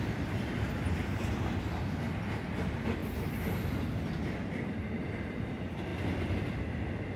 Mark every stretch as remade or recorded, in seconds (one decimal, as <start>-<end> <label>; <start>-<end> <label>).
0.0-7.2 recorded